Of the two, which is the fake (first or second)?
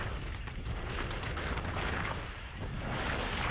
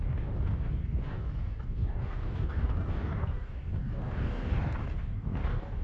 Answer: second